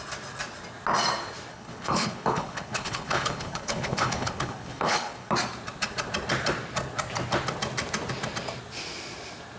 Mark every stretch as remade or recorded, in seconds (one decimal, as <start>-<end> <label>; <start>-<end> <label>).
0.0-1.5 recorded; 1.5-5.3 remade; 5.3-9.6 recorded